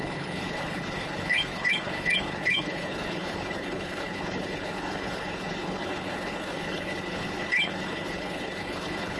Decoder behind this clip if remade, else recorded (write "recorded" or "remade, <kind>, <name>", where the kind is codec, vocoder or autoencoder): remade, codec, HILCodec